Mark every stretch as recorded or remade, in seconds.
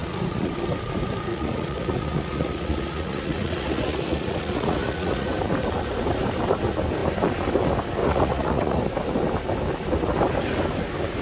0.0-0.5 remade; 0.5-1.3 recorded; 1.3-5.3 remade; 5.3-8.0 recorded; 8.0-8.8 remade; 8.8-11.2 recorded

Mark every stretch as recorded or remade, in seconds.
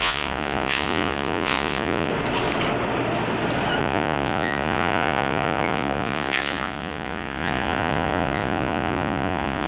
0.0-2.1 remade; 2.1-3.8 recorded; 3.8-9.7 remade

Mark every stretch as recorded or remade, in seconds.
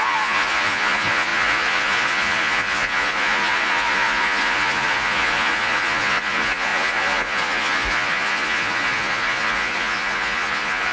0.0-10.9 remade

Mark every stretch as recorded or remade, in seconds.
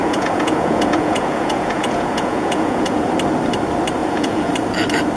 0.0-3.1 remade; 3.1-4.0 recorded; 4.0-4.5 remade; 4.5-5.2 recorded